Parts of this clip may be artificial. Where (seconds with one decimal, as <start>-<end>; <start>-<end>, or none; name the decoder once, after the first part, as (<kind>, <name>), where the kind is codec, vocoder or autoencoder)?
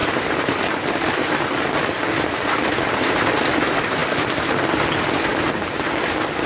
0.0-2.0 (vocoder, BigVGAN v2)